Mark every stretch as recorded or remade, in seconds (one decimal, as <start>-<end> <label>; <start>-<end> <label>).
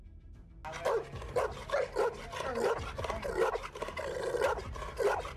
0.0-5.4 recorded